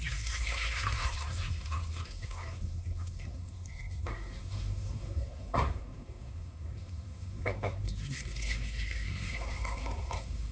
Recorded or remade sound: remade